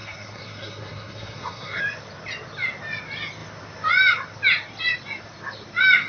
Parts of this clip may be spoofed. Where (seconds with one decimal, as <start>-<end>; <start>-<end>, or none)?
0.0-1.8